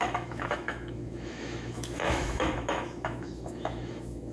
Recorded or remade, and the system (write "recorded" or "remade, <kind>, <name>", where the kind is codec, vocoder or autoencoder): remade, autoencoder, DAC-VAE